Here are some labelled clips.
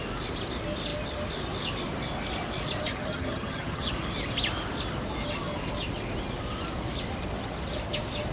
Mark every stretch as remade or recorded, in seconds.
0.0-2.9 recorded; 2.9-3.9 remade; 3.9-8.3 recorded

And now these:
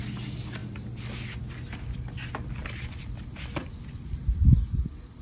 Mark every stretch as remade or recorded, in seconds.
0.0-5.2 recorded

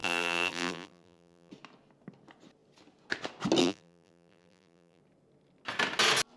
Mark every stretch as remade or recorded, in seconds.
0.0-1.5 remade; 1.5-3.6 recorded; 3.6-5.0 remade; 5.0-6.4 recorded

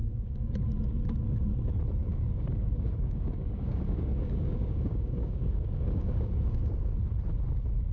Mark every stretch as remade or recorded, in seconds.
0.0-0.5 remade; 0.5-2.0 recorded; 2.0-6.7 remade; 6.7-7.9 recorded